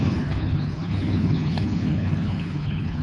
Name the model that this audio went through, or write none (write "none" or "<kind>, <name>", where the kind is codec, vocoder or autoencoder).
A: codec, HILCodec